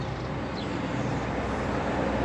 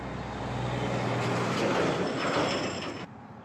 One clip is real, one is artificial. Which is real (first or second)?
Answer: second